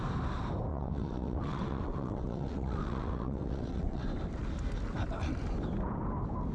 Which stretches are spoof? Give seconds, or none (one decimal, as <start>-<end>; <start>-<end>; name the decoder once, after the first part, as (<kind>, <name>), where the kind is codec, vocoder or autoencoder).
0.7-4.1 (vocoder, WaveNeXt)